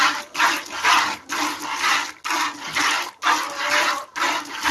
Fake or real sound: real